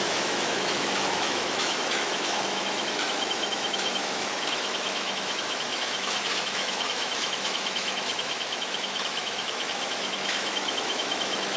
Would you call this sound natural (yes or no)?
no